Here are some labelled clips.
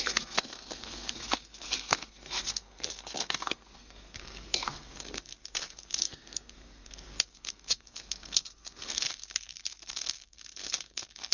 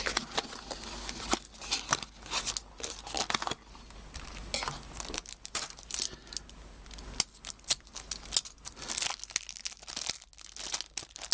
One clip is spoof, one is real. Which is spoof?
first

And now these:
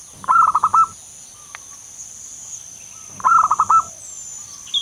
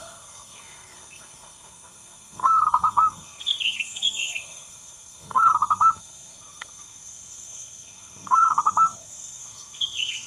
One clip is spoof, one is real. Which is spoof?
second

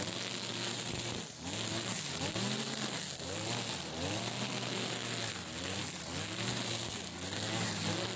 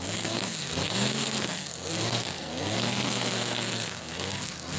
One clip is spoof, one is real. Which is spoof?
second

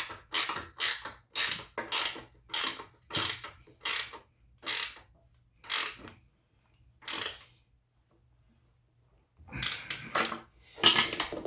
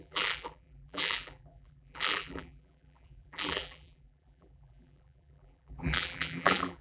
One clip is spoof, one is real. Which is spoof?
second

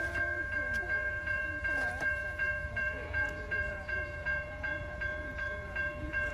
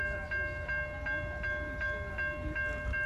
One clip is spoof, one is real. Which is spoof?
first